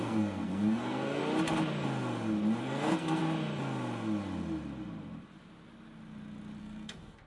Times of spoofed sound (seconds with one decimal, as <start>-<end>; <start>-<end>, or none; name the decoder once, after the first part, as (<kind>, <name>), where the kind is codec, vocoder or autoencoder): 0.0-1.2 (codec, SNAC); 2.6-3.2; 6.6-7.3